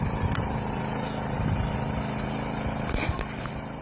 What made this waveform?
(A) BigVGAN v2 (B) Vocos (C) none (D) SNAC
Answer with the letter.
C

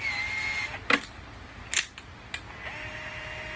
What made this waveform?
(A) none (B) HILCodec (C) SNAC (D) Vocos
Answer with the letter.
A